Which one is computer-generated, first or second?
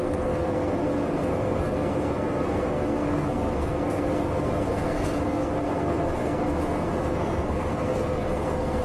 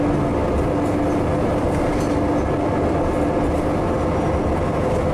first